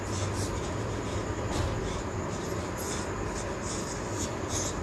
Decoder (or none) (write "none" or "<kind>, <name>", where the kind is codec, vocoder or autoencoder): none